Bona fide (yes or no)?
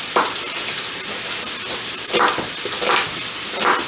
yes